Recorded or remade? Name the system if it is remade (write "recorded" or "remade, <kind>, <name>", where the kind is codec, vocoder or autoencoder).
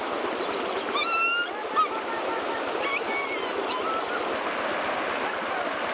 recorded